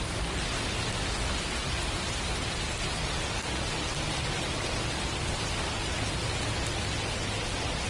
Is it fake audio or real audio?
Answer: real